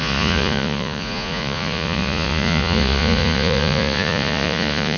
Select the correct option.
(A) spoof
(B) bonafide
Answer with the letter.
A